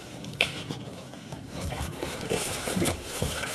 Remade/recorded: remade